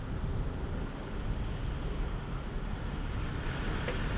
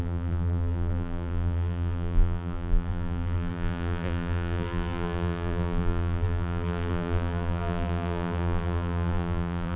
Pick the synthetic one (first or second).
second